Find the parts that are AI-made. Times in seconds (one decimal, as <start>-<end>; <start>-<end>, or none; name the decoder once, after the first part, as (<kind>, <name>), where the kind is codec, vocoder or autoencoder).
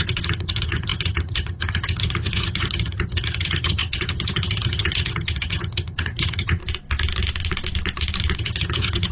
0.0-6.6 (vocoder, HiFi-GAN); 8.4-9.1